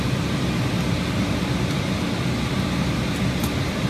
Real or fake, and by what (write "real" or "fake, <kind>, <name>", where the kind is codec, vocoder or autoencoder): real